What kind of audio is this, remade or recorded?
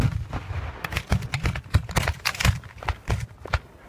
recorded